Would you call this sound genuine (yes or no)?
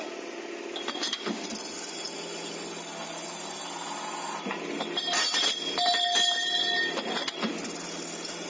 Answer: yes